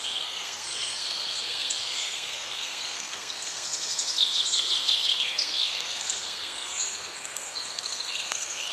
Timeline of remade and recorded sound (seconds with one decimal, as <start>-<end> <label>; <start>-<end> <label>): 0.0-8.7 remade